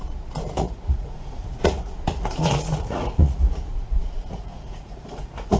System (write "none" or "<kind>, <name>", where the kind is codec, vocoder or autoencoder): vocoder, Vocos